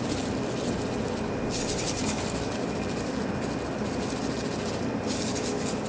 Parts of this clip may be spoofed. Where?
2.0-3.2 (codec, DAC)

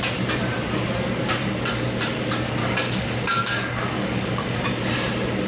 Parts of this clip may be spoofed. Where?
1.4-2.0 (codec, DAC); 2.6-4.6

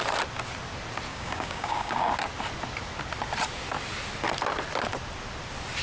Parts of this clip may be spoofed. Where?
1.1-2.1 (codec, DAC)

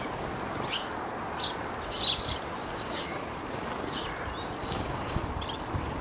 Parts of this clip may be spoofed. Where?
2.6-3.2 (codec, DAC); 4.6-5.2